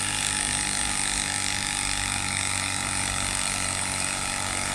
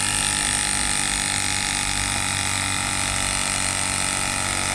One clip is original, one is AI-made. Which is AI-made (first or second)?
first